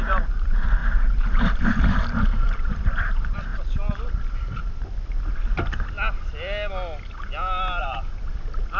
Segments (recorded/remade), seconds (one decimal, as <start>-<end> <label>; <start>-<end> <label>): 0.0-3.5 remade; 3.5-7.8 recorded; 7.8-8.3 remade; 8.3-8.8 recorded